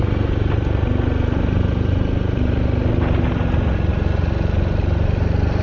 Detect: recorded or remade recorded